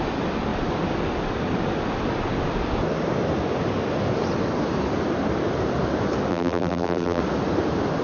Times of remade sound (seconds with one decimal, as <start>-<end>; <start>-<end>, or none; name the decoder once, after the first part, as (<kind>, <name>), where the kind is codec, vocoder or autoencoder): 6.3-7.2 (vocoder, BigVGAN v2)